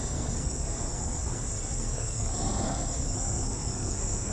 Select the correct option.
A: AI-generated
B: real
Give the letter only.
A